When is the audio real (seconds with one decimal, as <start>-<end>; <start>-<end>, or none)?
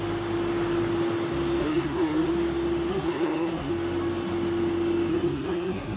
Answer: 0.0-1.6; 2.3-2.9; 3.7-5.1